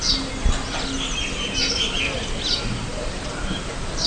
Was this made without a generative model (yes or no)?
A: yes